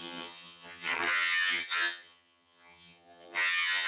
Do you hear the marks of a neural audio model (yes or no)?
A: yes